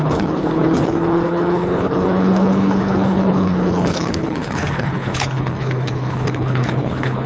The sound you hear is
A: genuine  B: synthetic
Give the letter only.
B